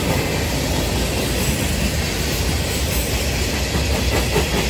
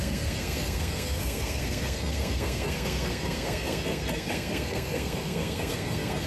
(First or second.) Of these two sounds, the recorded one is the first